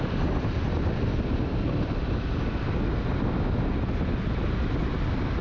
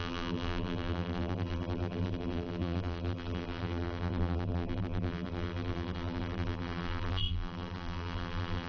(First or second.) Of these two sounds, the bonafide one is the first